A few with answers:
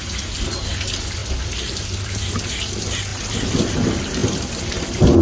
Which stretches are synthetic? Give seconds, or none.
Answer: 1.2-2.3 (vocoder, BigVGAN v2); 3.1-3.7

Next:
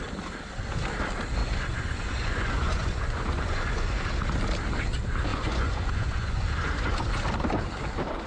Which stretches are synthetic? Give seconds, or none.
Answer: 1.4-4.0 (vocoder, Vocos); 5.3-7.1

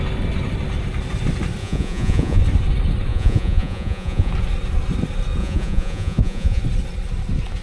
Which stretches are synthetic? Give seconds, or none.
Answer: 1.6-2.4 (vocoder, Vocos); 3.1-4.3; 5.4-6.6

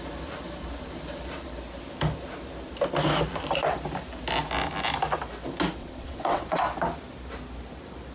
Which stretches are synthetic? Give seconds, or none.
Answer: 5.8-6.6 (vocoder, WaveNeXt)

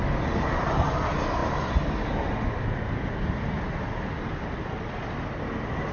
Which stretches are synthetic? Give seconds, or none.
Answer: none

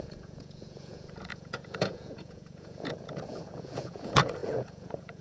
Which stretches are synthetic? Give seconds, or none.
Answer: 0.0-5.2 (vocoder, Vocos)

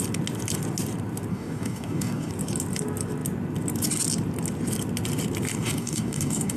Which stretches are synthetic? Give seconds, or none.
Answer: 1.3-2.3 (codec, DAC); 5.5-6.6